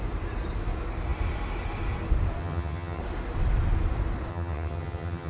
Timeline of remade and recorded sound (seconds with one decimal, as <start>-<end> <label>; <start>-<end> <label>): 0.0-2.4 recorded; 2.4-3.0 remade; 3.0-4.3 recorded; 4.3-5.3 remade